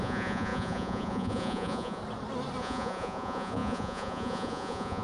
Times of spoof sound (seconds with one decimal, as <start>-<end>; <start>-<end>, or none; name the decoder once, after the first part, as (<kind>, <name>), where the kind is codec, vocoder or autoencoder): 0.0-2.0 (vocoder, Vocos); 2.6-5.0